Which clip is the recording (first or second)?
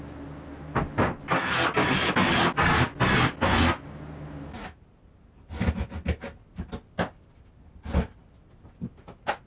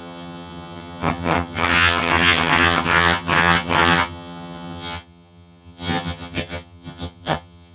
first